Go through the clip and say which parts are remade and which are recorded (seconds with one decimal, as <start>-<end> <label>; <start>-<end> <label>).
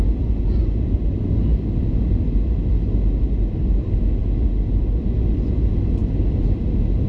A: 0.0-7.1 recorded